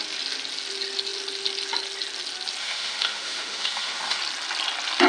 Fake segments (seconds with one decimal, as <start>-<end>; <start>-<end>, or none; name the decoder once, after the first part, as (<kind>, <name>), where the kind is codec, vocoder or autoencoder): 2.6-4.2 (autoencoder, DAC-VAE)